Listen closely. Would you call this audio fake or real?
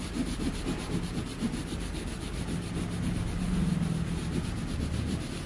fake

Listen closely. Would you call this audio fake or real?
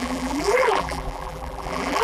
fake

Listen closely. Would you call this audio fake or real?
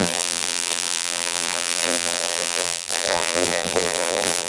fake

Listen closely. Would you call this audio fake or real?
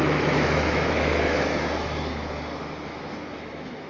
fake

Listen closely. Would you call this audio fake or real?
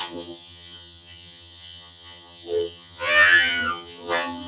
fake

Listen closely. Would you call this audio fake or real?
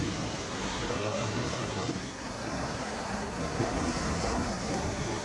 fake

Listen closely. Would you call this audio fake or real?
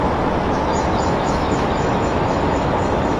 fake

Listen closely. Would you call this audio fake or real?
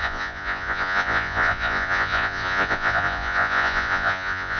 fake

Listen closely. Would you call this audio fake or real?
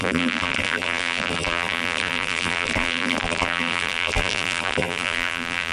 fake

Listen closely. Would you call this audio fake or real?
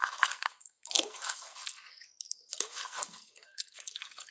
fake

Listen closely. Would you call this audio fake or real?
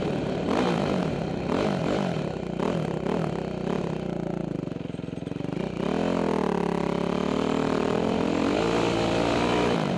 real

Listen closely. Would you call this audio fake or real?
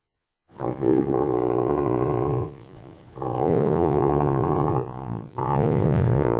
fake